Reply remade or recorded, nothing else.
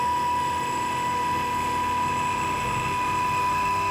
remade